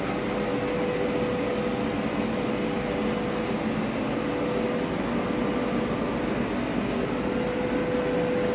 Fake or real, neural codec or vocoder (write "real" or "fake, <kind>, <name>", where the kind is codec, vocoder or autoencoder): real